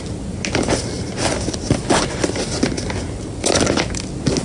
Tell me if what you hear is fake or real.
real